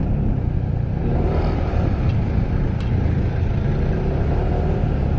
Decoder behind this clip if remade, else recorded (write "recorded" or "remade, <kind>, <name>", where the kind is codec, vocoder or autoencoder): recorded